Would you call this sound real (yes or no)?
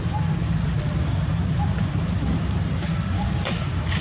yes